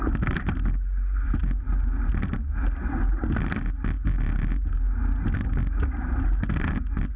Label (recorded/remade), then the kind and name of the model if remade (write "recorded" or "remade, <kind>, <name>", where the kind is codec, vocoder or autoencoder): recorded